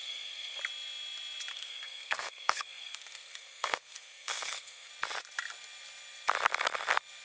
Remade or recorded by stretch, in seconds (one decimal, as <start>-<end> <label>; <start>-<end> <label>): 0.0-0.6 remade; 0.6-1.5 recorded; 1.5-4.9 remade; 4.9-7.2 recorded